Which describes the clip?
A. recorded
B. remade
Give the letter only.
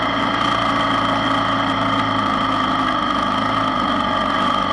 A